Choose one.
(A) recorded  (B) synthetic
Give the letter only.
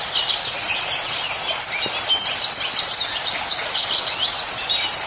B